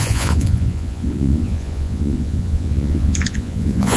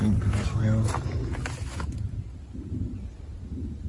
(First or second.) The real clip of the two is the second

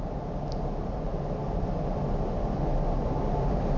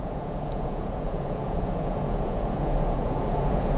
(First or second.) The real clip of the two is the first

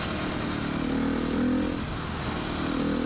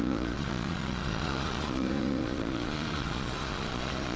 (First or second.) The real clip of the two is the first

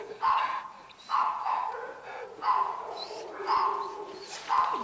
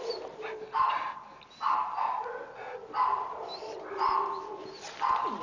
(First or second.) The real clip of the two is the second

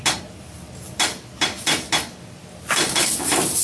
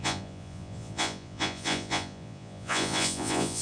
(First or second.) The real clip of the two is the first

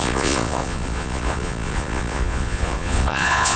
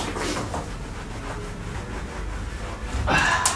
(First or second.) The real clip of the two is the second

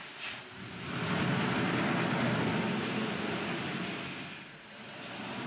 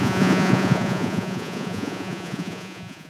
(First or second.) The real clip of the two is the first